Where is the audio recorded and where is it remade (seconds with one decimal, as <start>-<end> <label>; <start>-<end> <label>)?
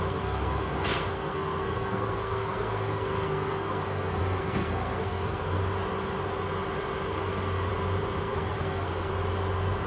0.0-5.6 remade; 5.6-7.1 recorded; 7.1-7.7 remade; 7.7-8.2 recorded; 8.2-9.1 remade; 9.1-9.9 recorded